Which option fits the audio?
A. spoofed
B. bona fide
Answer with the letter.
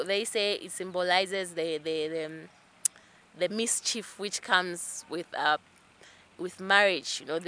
B